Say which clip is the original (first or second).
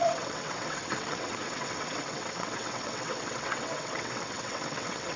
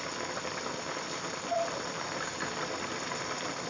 second